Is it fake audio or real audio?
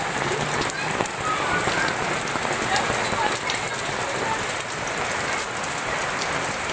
real